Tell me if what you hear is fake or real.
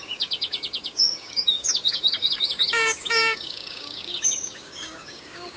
fake